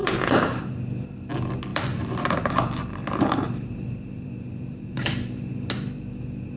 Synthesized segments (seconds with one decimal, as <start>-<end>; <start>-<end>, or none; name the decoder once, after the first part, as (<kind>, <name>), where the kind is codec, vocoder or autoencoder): 0.0-0.7 (vocoder, BigVGAN v2); 1.7-5.7